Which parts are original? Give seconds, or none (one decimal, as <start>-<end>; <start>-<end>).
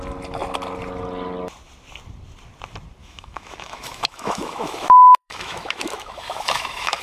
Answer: 0.0-3.0